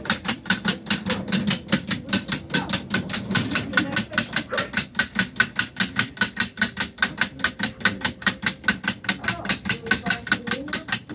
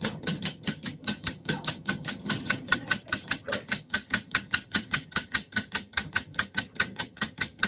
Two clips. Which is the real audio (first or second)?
first